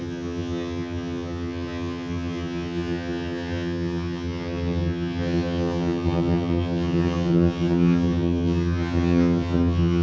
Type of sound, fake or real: fake